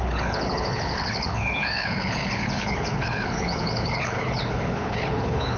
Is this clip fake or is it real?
fake